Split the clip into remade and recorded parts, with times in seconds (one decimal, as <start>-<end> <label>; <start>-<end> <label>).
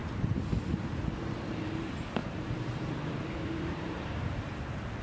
0.0-2.2 recorded; 2.2-4.6 remade; 4.6-5.0 recorded